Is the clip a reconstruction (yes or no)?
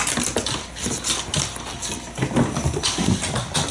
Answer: no